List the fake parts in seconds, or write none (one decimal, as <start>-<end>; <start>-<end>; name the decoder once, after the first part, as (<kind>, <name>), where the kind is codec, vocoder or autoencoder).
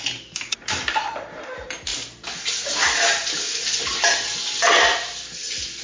0.0-1.9 (vocoder, BigVGAN v2); 4.5-5.8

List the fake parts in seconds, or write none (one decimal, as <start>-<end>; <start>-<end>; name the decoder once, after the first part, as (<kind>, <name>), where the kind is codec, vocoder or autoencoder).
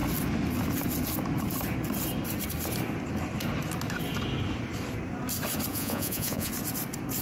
5.7-6.5 (vocoder, Vocos)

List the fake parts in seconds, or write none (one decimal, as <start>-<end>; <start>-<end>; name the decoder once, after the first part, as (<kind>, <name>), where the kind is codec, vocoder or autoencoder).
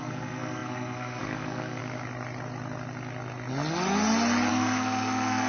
0.0-1.8 (codec, SNAC); 4.5-5.5